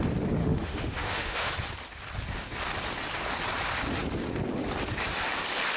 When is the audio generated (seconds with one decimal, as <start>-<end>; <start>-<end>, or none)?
0.4-1.5